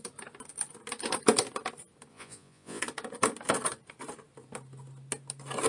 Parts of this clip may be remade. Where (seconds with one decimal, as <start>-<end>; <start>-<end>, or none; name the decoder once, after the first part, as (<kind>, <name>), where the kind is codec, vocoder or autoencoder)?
2.1-2.8 (vocoder, Vocos)